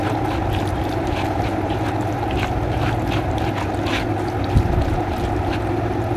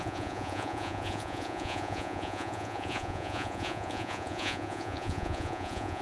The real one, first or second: first